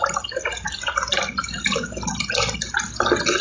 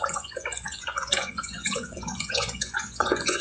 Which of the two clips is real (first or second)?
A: first